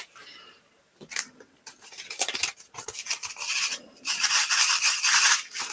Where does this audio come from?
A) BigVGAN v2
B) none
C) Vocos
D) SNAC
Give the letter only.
A